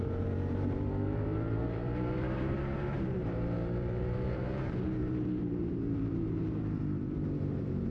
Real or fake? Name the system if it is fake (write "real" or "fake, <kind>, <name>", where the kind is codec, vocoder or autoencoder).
fake, vocoder, BigVGAN v2